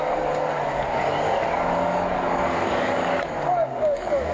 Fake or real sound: fake